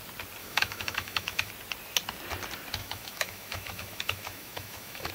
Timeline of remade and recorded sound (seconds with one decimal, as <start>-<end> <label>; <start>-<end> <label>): 0.0-0.4 recorded; 0.4-1.5 remade; 1.5-2.8 recorded; 2.8-5.1 remade